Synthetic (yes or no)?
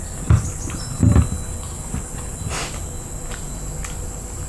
no